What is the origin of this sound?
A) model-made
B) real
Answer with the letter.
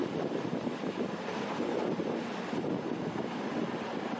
B